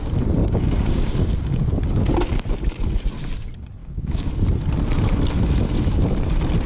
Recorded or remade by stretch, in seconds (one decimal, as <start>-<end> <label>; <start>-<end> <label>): 0.0-0.4 recorded; 0.4-1.1 remade; 1.1-3.8 recorded; 3.8-4.3 remade; 4.3-6.7 recorded